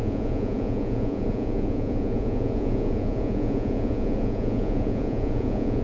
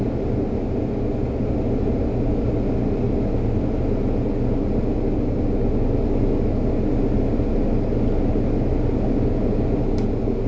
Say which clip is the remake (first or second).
first